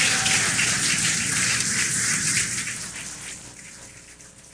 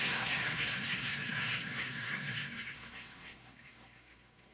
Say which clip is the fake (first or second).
second